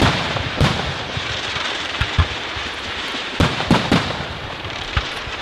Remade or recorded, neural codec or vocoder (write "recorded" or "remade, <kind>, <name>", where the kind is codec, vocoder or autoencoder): remade, vocoder, BigVGAN v2